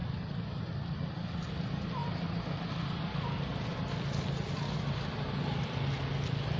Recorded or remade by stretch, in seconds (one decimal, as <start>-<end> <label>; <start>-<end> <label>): 0.0-6.6 recorded